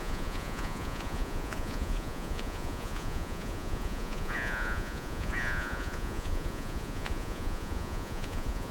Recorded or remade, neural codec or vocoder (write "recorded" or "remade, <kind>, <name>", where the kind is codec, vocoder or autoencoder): remade, vocoder, Vocos